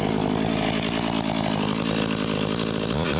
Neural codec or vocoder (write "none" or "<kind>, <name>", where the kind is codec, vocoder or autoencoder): none